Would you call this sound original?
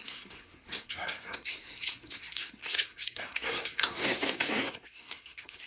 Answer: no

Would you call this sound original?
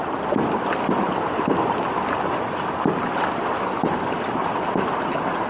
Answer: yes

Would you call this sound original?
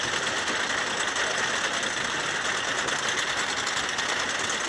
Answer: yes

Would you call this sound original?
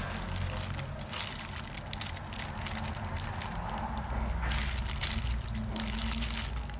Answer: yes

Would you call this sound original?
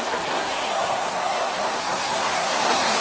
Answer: no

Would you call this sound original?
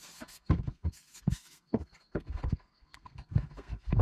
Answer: no